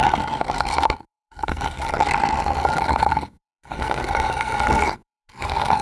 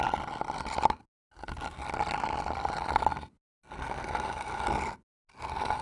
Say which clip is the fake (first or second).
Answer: first